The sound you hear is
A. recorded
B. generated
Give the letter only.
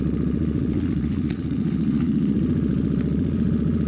B